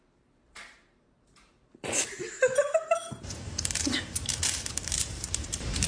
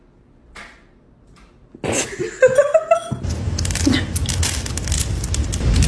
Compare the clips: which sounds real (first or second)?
second